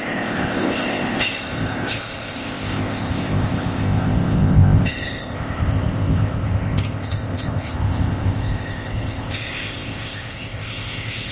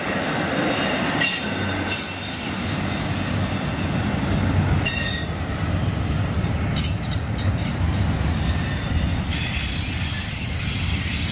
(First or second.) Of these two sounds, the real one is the second